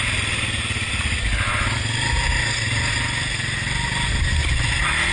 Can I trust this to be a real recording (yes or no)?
yes